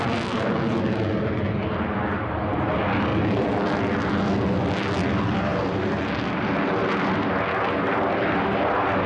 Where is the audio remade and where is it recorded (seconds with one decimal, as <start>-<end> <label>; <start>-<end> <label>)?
0.0-9.1 recorded